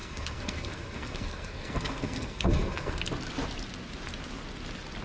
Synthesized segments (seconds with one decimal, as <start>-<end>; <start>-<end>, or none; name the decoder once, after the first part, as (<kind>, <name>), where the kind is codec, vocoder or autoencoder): 0.0-3.0 (codec, SNAC)